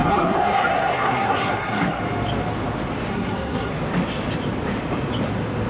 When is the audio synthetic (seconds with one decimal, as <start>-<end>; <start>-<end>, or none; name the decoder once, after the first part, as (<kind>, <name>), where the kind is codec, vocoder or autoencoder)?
0.0-2.0 (codec, SNAC); 3.1-3.7